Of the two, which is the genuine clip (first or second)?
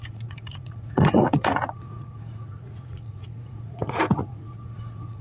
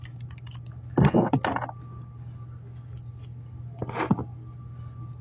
second